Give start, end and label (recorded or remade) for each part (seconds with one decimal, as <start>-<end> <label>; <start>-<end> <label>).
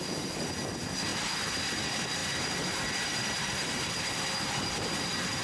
0.0-2.2 recorded; 2.2-3.9 remade; 3.9-5.4 recorded